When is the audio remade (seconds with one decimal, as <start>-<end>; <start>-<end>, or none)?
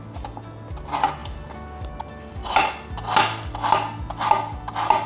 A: none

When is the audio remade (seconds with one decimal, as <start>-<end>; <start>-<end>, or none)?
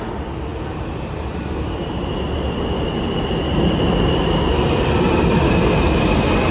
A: none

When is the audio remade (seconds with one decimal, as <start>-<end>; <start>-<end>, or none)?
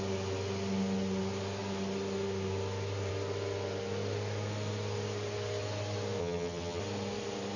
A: 6.2-6.8